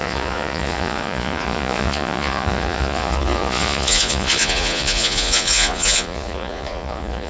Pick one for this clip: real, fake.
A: fake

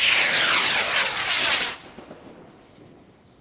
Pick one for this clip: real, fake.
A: real